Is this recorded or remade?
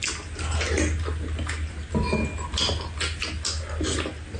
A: recorded